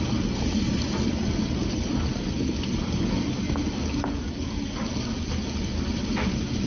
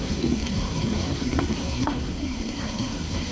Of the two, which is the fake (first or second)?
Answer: second